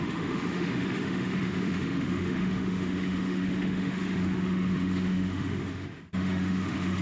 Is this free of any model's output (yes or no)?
no